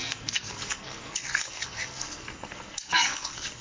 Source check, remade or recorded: remade